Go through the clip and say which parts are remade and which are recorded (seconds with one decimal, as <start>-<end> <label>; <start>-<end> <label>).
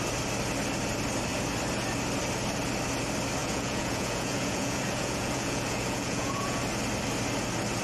0.0-3.4 recorded; 3.4-6.6 remade; 6.6-7.8 recorded